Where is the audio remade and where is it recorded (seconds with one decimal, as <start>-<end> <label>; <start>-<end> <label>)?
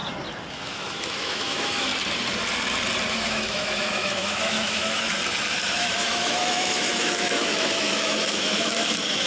0.0-0.5 recorded; 0.5-1.9 remade; 1.9-3.1 recorded; 3.1-5.2 remade; 5.2-5.8 recorded; 5.8-9.3 remade